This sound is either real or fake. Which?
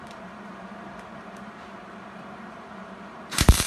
fake